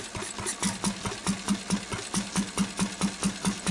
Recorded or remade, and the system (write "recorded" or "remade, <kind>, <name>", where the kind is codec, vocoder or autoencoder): recorded